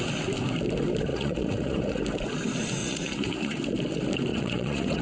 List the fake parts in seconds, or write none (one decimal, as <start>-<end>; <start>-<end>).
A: 1.1-2.0; 2.8-3.6; 4.3-5.0